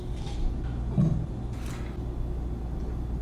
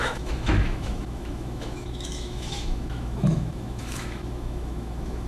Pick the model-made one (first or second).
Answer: second